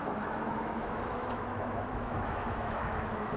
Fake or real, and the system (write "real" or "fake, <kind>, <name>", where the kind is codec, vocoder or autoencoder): fake, autoencoder, DAC-VAE